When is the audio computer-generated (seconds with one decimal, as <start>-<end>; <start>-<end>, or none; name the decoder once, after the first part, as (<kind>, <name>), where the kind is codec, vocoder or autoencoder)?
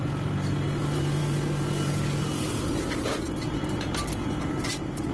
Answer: none